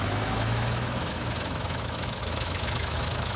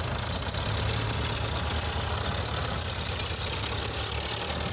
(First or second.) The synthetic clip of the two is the first